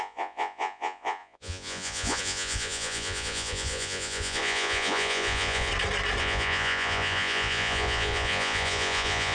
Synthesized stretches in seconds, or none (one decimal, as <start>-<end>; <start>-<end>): 0.0-5.7; 6.2-9.3